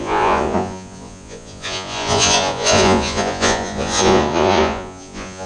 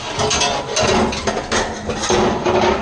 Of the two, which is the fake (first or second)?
first